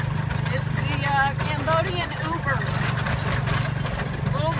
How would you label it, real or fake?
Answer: real